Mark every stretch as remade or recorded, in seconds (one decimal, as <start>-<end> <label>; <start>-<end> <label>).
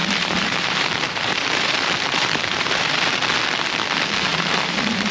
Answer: 0.0-3.1 remade; 3.1-4.3 recorded; 4.3-5.1 remade